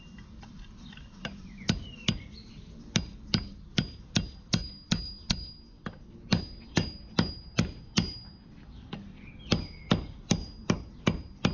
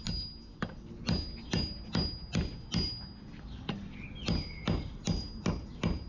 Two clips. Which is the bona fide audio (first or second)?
second